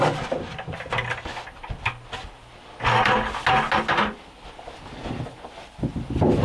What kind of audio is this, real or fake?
real